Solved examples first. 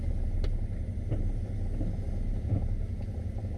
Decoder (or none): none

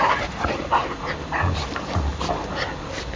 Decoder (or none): none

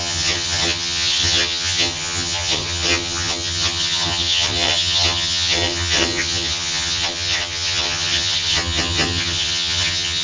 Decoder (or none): vocoder, HiFi-GAN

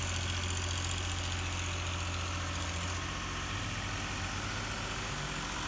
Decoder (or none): none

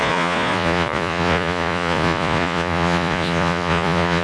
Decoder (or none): vocoder, Vocos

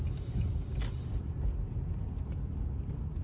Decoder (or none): none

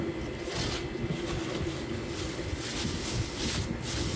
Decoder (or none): none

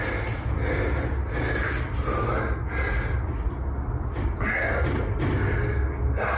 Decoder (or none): none